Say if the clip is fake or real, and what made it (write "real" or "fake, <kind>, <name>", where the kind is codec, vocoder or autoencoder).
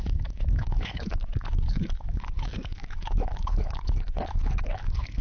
fake, autoencoder, DAC-VAE